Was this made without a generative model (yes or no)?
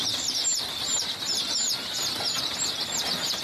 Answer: yes